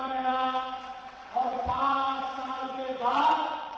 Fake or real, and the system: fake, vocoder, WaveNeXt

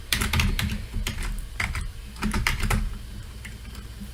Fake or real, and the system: fake, vocoder, BigVGAN v2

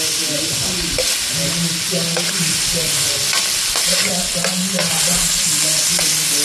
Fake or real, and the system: real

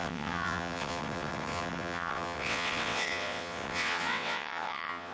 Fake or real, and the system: fake, vocoder, WaveNeXt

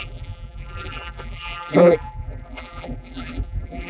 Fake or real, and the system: fake, vocoder, BigVGAN v2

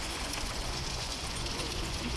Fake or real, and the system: fake, vocoder, Vocos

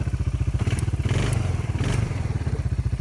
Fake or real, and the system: fake, vocoder, BigVGAN v2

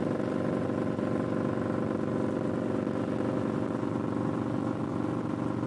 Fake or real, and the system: real